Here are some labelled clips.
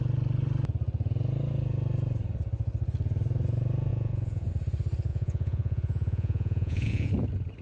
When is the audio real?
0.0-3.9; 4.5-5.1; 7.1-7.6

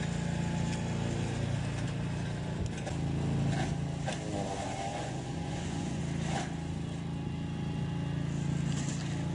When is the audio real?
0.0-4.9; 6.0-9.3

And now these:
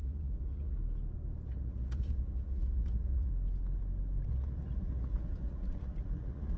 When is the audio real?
0.8-1.5; 3.3-4.3

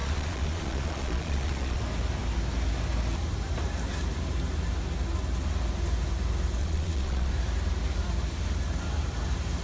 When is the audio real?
1.8-6.6; 7.3-9.6

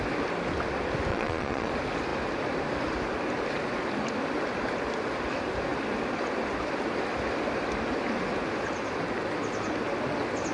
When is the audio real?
0.0-1.1; 1.7-10.5

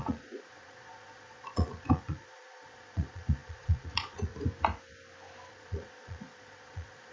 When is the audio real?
4.3-5.5

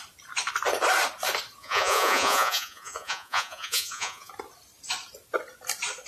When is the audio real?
0.0-1.6; 4.3-6.1

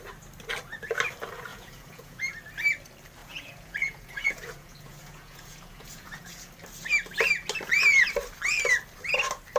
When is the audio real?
0.0-1.5; 2.2-3.2; 6.5-9.6